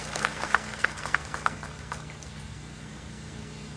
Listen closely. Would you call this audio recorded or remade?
remade